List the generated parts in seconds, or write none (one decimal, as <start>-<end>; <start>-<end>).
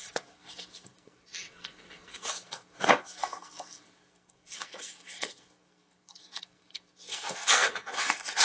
0.0-8.4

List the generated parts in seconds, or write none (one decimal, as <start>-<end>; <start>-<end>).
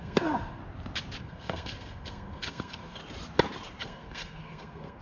0.0-0.6; 1.2-3.0; 3.8-5.0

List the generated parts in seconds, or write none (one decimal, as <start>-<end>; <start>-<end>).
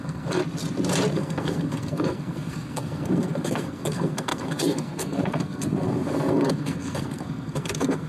0.0-0.4; 1.1-8.1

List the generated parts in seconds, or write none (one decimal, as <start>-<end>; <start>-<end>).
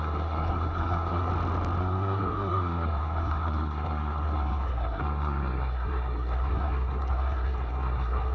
0.0-1.3; 1.8-8.3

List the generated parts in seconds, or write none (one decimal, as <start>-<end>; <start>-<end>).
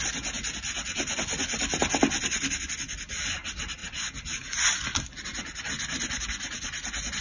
none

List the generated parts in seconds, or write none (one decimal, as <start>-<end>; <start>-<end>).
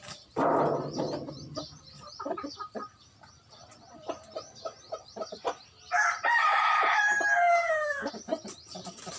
7.4-8.1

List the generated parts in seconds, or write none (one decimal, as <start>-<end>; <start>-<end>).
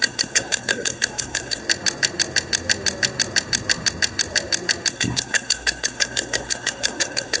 0.0-1.6; 4.9-7.4